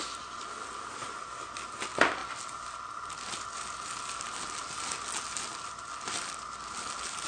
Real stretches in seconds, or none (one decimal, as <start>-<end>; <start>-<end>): 0.0-7.3

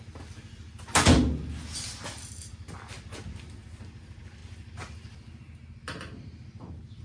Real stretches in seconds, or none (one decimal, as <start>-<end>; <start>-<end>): 0.0-7.0

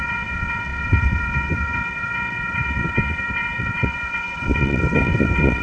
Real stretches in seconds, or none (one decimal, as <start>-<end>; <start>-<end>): none